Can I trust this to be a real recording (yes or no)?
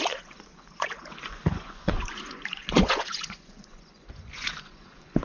no